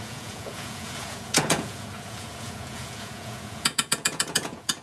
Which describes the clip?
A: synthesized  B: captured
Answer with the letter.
A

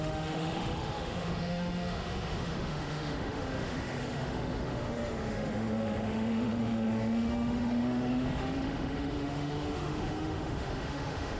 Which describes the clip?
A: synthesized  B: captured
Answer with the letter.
A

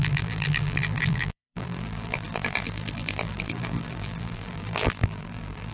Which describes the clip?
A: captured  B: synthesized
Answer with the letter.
B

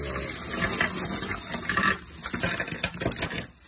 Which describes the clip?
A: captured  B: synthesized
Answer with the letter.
A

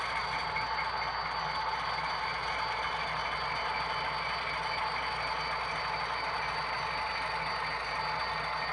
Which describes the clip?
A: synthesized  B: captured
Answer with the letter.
B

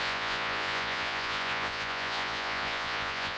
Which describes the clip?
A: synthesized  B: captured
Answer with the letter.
A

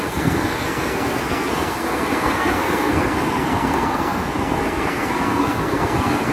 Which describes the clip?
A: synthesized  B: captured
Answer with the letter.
A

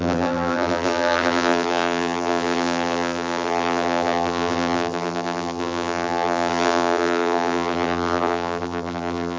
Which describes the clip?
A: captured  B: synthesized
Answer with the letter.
B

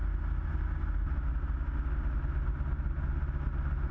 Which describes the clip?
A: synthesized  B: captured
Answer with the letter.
B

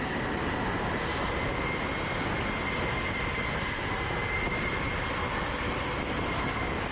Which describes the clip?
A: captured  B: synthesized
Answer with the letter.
A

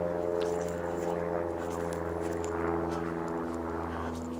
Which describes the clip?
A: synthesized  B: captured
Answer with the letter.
B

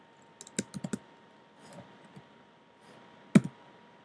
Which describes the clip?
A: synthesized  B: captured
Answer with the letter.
B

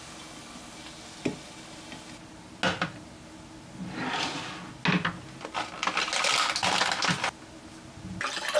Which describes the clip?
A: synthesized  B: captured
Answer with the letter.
B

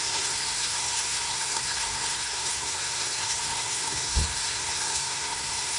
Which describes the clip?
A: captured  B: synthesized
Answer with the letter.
B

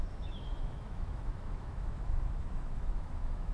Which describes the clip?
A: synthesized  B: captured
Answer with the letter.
A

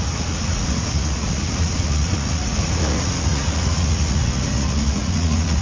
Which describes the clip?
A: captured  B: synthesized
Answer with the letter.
B